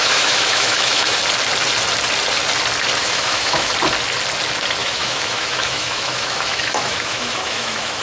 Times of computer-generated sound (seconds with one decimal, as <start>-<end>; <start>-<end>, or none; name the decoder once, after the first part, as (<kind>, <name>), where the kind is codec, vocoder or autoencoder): 0.0-1.2 (autoencoder, DAC-VAE); 3.0-3.7; 4.8-8.0